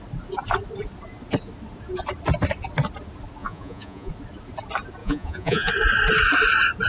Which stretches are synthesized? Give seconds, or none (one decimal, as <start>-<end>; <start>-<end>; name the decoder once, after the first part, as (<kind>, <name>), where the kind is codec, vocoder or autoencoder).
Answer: 3.4-4.1 (vocoder, Vocos); 5.0-5.7